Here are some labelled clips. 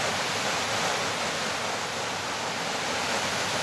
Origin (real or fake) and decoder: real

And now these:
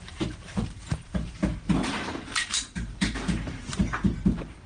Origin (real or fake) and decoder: fake, vocoder, BigVGAN v2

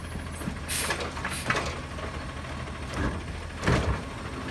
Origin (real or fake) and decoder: real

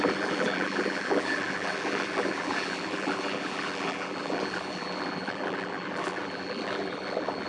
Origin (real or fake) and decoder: fake, vocoder, BigVGAN v2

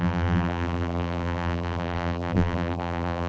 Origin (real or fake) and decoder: fake, vocoder, BigVGAN v2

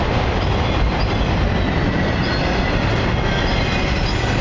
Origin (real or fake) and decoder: real